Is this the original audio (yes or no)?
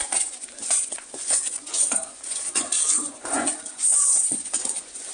no